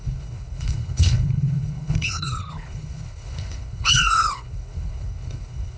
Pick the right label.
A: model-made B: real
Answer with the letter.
A